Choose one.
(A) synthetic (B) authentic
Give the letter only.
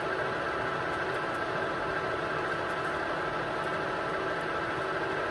B